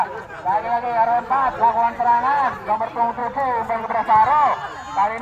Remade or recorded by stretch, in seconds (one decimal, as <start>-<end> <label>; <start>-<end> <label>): 0.0-5.2 recorded